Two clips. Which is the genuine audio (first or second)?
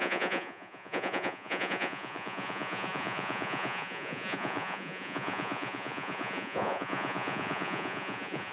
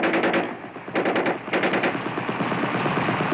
second